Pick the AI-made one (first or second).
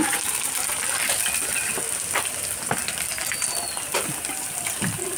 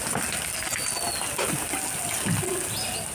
first